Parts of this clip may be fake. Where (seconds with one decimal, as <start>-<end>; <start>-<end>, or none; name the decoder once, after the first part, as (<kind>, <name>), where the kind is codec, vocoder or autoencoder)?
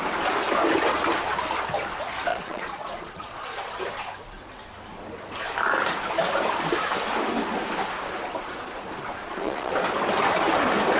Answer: 2.3-3.8 (vocoder, Vocos); 9.2-9.7